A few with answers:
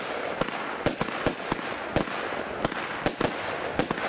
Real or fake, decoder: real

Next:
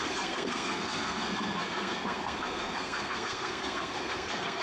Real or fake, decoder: fake, codec, SNAC